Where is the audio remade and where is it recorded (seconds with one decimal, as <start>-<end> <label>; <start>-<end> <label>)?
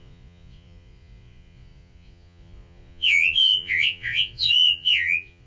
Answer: 0.0-5.5 remade